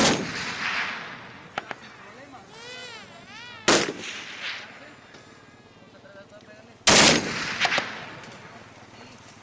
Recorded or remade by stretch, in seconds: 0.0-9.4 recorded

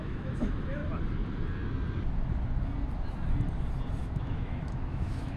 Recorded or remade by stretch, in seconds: 0.0-0.8 remade; 0.8-4.0 recorded; 4.0-5.4 remade

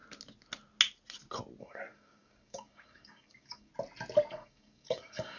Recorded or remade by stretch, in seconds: 0.0-1.6 recorded; 1.6-3.7 remade; 3.7-4.3 recorded; 4.3-5.4 remade

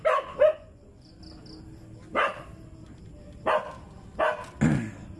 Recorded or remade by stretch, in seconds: 0.0-0.5 recorded; 0.5-1.2 remade; 1.2-5.2 recorded

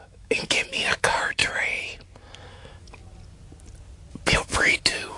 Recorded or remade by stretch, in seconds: 0.0-1.4 remade; 1.4-2.5 recorded; 2.5-3.0 remade; 3.0-4.3 recorded; 4.3-5.2 remade